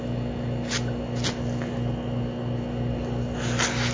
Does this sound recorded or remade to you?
recorded